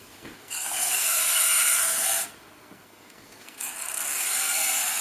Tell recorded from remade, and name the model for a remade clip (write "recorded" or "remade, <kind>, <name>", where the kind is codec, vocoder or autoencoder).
remade, codec, SNAC